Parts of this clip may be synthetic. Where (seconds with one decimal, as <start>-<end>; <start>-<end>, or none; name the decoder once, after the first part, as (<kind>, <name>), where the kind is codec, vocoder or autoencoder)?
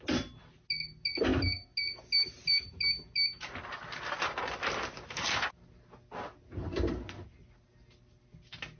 none